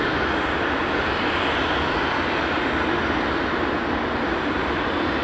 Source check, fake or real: real